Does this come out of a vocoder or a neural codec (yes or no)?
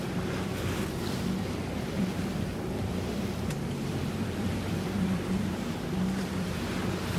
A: yes